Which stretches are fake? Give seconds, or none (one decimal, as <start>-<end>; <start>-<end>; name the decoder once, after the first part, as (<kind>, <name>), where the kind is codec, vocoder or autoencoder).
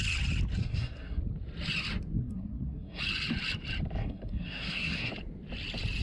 0.6-1.2 (codec, SNAC); 2.2-3.0; 4.0-5.1